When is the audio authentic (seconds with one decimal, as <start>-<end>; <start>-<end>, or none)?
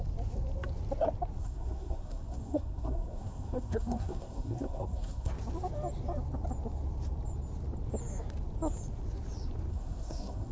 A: 0.0-1.4; 5.3-9.7